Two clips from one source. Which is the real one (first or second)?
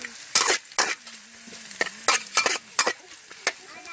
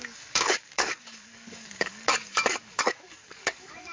first